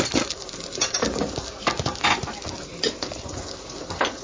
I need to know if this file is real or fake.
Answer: real